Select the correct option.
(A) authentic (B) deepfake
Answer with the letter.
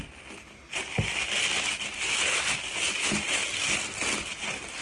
A